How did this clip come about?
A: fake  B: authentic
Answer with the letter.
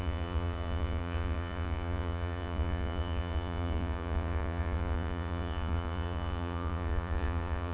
A